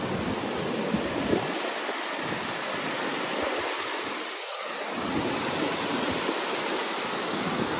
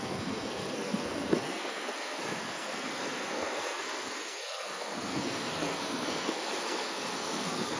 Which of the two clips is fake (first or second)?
second